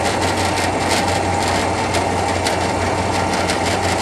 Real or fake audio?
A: real